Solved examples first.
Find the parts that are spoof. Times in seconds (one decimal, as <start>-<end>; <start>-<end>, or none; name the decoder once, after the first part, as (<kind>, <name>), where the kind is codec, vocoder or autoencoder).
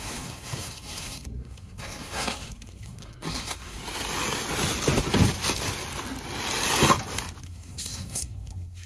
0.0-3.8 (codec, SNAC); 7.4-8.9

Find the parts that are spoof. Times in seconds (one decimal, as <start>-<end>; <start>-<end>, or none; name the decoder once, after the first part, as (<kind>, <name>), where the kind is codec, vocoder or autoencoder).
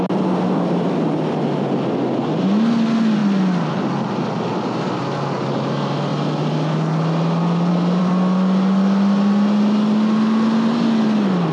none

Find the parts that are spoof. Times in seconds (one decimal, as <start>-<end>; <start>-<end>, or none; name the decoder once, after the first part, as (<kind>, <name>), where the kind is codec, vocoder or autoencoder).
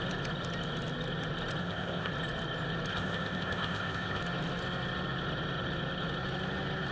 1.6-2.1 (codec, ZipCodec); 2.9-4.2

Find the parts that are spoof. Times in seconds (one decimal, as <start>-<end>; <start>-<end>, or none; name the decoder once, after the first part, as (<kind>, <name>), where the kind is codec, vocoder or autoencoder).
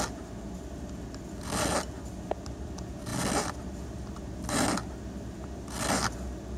3.1-4.1 (vocoder, BigVGAN v2)